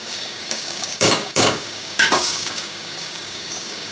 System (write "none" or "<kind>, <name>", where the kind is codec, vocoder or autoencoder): codec, DAC